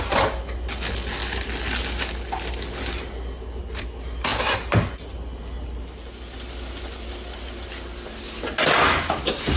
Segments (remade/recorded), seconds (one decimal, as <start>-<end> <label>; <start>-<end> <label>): 0.0-9.6 recorded